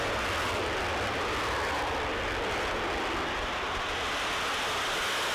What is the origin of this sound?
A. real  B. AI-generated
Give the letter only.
A